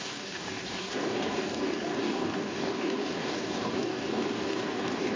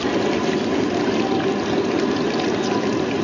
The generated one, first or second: first